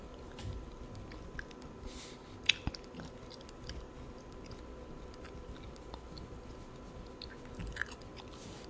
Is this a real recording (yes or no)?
yes